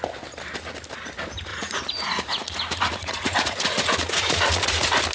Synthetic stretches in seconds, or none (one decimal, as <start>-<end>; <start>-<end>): 1.5-4.6